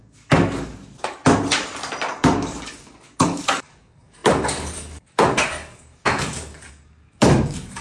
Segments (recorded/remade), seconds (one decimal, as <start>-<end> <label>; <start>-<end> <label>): 0.0-1.2 remade; 1.2-2.1 recorded; 2.1-7.8 remade